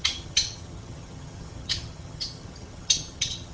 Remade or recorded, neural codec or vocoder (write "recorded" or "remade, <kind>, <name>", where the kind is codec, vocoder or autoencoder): remade, vocoder, HiFi-GAN